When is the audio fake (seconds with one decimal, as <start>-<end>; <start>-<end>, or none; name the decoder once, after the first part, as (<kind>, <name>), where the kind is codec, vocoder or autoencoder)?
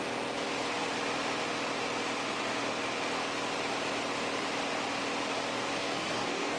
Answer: 5.8-6.6 (codec, SNAC)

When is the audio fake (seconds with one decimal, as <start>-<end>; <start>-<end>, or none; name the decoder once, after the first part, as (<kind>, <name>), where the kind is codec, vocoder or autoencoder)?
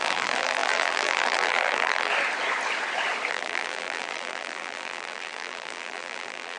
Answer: 0.0-2.1 (vocoder, BigVGAN v2); 3.3-6.6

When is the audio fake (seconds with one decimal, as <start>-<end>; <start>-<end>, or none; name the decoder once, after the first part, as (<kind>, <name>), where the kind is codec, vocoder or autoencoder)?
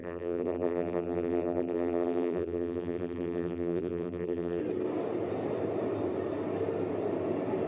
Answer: 0.0-4.6 (vocoder, BigVGAN v2)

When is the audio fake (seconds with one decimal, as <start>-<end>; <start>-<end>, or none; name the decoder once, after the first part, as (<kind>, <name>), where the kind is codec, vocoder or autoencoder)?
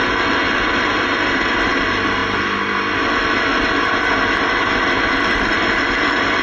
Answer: 0.0-2.2 (vocoder, BigVGAN v2); 5.3-6.4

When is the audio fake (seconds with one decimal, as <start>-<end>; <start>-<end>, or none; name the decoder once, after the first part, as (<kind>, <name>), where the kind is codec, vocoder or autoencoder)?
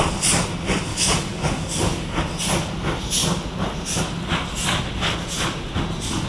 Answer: 0.9-2.2 (codec, DAC)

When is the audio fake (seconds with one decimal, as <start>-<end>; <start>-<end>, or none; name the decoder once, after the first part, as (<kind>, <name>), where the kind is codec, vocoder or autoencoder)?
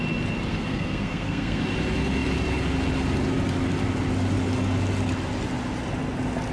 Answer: 0.5-1.6 (codec, SNAC)